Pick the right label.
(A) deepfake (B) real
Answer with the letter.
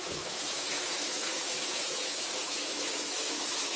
A